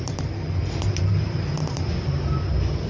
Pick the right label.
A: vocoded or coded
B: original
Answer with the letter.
B